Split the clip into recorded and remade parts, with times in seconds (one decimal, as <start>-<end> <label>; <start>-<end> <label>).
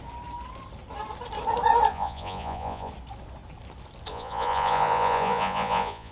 0.0-1.9 recorded; 1.9-2.9 remade; 2.9-4.1 recorded; 4.1-6.1 remade